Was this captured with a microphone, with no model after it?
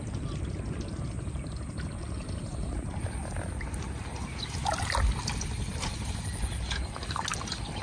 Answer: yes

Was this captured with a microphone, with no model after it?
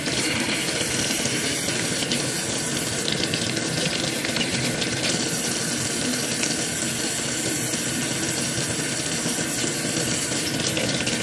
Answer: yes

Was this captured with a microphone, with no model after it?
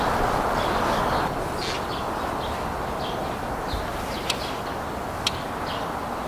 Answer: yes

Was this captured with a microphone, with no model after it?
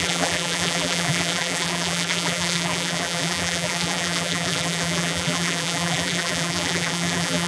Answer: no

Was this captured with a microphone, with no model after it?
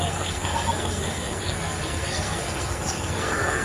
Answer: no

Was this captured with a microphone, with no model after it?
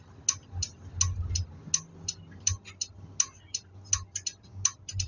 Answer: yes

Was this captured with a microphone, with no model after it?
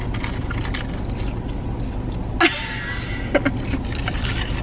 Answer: yes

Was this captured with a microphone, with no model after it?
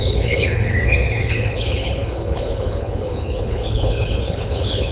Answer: no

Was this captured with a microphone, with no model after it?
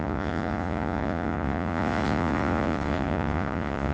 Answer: no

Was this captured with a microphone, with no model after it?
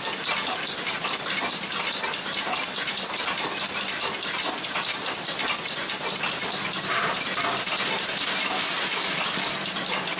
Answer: yes